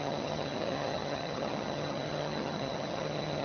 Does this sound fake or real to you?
fake